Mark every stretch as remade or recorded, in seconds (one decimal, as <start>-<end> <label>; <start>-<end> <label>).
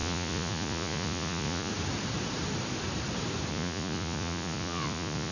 0.0-1.7 remade; 1.7-3.5 recorded; 3.5-5.3 remade